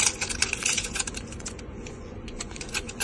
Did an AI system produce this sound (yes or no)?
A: yes